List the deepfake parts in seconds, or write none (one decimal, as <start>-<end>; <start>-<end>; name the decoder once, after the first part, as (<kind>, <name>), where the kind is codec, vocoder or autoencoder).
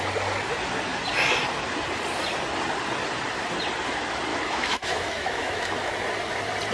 4.3-5.9 (autoencoder, DAC-VAE)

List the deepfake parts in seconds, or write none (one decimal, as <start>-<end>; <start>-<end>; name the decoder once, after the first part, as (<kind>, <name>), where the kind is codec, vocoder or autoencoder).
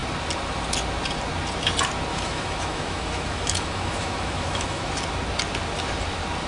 2.1-4.9 (autoencoder, DAC-VAE)